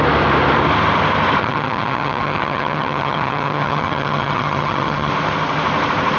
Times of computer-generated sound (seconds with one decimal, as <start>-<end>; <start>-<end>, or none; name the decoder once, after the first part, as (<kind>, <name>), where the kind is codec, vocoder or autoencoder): 1.4-5.1 (vocoder, HiFi-GAN)